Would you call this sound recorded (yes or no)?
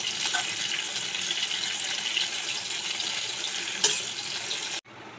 yes